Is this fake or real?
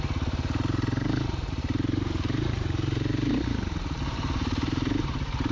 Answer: fake